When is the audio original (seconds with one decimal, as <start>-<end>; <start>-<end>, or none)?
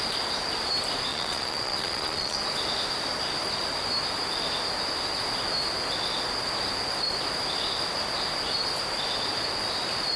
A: 0.0-1.1; 2.4-10.2